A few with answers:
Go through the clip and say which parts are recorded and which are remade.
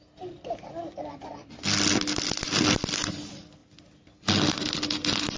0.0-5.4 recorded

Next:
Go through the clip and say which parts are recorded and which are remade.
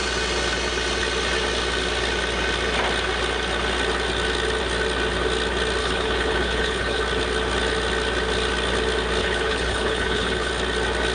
0.0-5.8 recorded; 5.8-7.0 remade; 7.0-9.2 recorded; 9.2-10.5 remade; 10.5-11.1 recorded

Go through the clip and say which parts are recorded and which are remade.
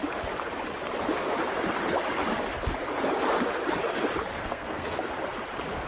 0.0-4.3 recorded; 4.3-5.0 remade; 5.0-5.9 recorded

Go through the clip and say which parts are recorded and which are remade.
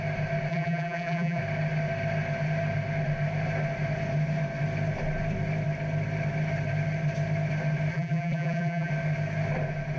0.0-0.5 recorded; 0.5-1.4 remade; 1.4-7.9 recorded; 7.9-8.9 remade; 8.9-10.0 recorded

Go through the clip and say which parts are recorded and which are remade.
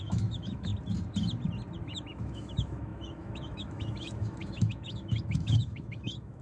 0.0-0.7 remade; 0.7-1.8 recorded; 1.8-6.4 remade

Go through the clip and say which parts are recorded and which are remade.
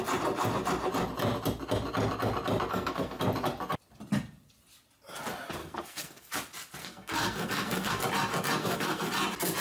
0.0-2.7 recorded; 2.7-3.2 remade; 3.2-5.6 recorded; 5.6-6.3 remade; 6.3-6.8 recorded; 6.8-8.0 remade; 8.0-8.6 recorded; 8.6-9.1 remade; 9.1-9.6 recorded